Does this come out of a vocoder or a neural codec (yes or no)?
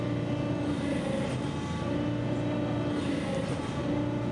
no